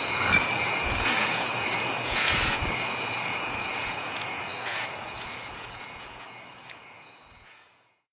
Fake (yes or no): yes